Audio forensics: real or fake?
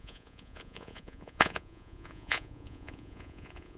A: fake